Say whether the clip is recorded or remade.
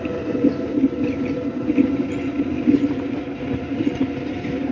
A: recorded